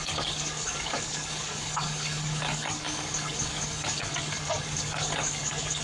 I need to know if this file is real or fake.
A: fake